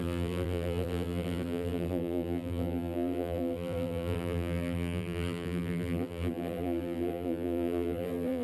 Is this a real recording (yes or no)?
no